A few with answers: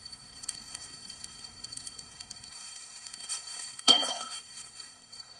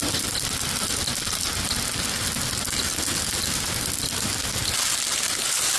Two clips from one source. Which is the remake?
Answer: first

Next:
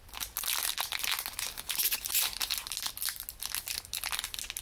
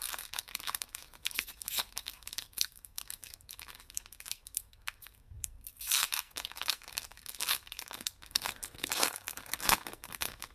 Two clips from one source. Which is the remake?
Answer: second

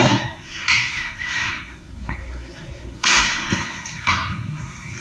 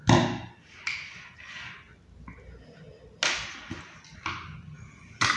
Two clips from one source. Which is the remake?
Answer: first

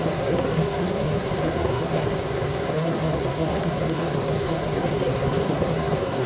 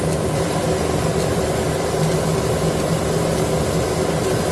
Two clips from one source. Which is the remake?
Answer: first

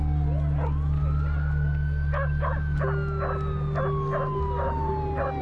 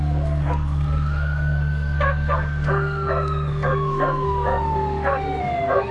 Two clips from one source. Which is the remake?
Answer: second